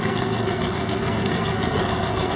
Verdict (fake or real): fake